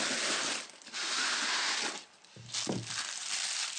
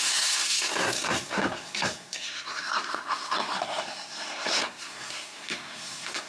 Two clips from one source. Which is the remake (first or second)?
second